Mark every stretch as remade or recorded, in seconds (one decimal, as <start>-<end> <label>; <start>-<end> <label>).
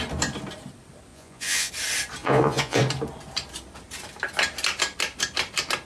0.0-1.1 recorded; 1.1-1.7 remade; 1.7-2.2 recorded; 2.2-2.8 remade; 2.8-5.9 recorded